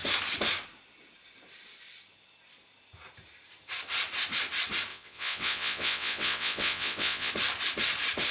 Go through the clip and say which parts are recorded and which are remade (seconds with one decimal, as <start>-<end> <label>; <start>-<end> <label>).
0.0-4.9 recorded; 4.9-7.3 remade; 7.3-8.3 recorded